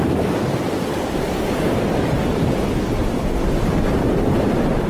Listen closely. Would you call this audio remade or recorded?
remade